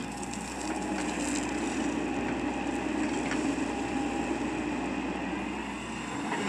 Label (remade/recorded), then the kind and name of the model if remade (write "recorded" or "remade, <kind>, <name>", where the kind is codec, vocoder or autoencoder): recorded